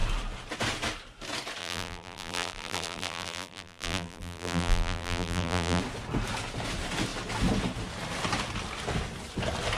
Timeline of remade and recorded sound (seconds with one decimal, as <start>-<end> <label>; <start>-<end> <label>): 0.0-1.6 recorded; 1.6-5.8 remade; 5.8-9.8 recorded